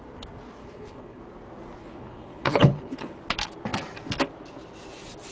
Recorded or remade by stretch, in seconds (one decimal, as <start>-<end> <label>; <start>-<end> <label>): 0.0-0.6 recorded; 0.6-1.2 remade; 1.2-1.8 recorded; 1.8-3.2 remade; 3.2-5.3 recorded